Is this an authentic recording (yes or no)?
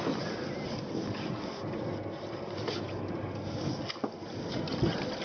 yes